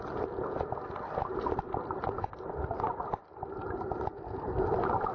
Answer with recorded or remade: recorded